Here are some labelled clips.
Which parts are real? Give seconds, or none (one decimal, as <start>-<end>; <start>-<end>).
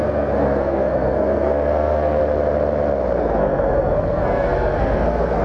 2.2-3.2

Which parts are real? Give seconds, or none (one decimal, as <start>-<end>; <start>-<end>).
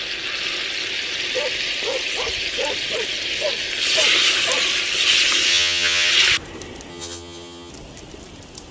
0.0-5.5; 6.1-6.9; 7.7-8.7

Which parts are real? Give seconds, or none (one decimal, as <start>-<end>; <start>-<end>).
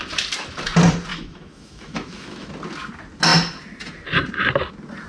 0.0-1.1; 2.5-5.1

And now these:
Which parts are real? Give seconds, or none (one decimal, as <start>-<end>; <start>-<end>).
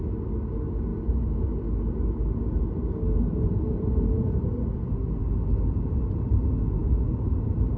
0.0-7.8